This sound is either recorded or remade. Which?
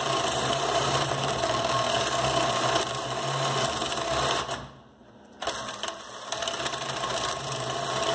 recorded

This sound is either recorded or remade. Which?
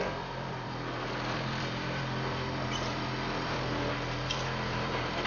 remade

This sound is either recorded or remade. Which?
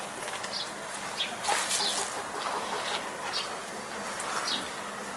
recorded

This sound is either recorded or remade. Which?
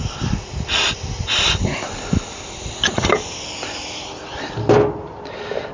recorded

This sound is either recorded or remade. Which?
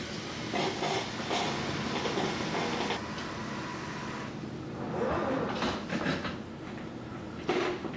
recorded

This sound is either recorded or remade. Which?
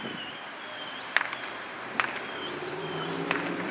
remade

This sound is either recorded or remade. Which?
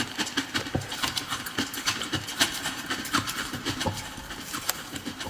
remade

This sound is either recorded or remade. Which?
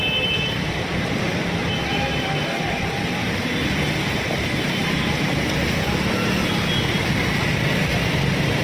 recorded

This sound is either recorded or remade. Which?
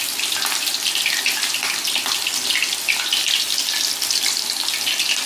recorded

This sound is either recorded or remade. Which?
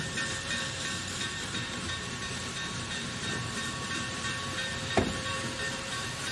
remade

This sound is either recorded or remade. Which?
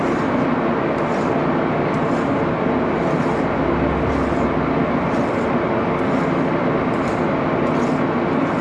recorded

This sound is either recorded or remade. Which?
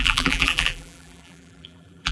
remade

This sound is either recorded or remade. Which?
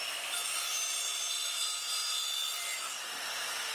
recorded